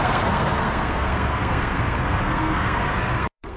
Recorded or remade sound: remade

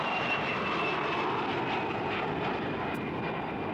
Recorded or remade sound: recorded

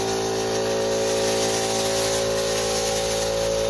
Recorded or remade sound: recorded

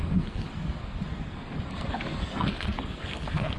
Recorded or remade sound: remade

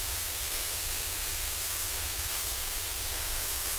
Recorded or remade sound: remade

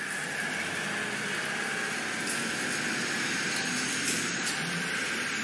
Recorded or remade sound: recorded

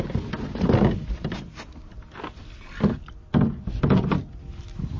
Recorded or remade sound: recorded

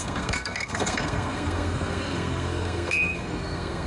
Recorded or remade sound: remade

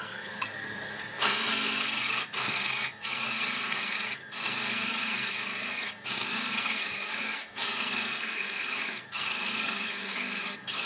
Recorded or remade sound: remade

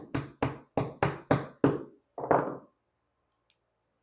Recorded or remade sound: recorded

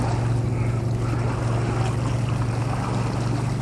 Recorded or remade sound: recorded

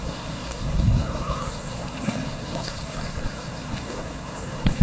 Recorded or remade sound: remade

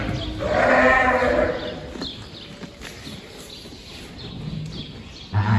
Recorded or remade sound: recorded